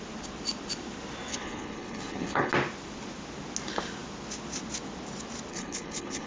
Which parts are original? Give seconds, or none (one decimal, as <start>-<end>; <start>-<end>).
0.0-1.3; 2.5-5.5